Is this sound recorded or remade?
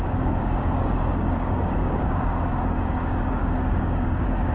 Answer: remade